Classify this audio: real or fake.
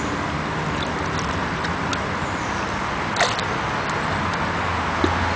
real